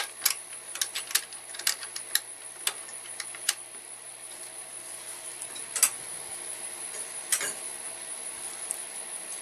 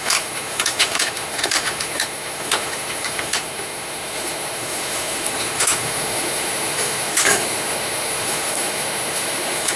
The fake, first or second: second